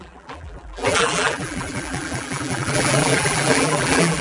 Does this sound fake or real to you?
fake